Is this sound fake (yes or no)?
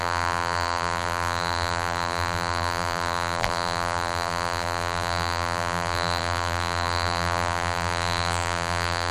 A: yes